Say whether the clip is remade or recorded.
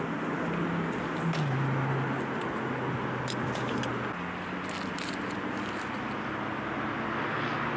recorded